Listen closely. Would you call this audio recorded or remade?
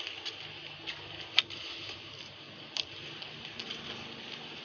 recorded